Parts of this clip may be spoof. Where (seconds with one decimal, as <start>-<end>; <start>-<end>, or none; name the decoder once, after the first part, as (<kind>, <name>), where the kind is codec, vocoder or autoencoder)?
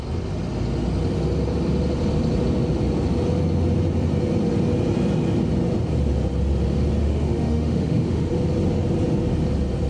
7.0-8.3 (autoencoder, DAC-VAE)